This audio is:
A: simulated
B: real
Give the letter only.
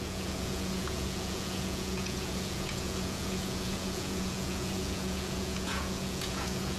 A